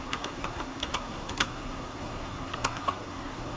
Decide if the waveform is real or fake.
fake